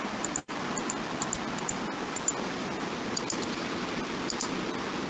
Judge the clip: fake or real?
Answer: real